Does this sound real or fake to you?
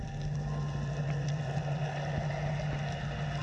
real